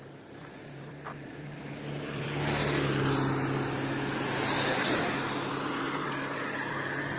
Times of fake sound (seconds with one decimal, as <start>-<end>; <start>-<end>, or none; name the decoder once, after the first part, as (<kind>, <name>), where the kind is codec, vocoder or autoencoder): 0.0-2.6 (vocoder, BigVGAN v2); 5.5-7.2